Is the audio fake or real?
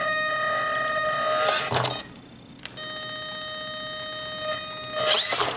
real